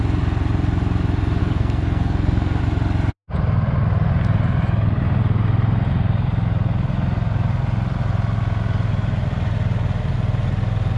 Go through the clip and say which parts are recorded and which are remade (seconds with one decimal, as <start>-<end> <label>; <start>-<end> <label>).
0.0-1.4 recorded; 1.4-2.6 remade; 2.6-11.0 recorded